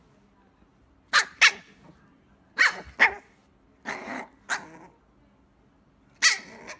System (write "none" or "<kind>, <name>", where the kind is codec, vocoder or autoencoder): none